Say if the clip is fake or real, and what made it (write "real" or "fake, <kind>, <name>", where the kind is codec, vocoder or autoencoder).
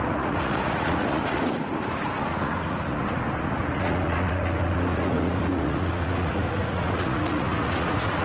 fake, vocoder, Vocos